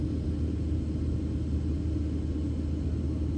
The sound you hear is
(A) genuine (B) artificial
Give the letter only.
A